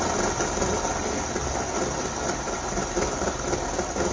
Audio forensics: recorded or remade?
recorded